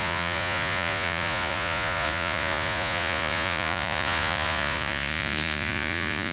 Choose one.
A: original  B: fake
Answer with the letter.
B